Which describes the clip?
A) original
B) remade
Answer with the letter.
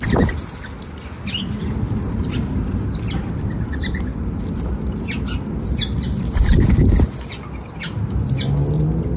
A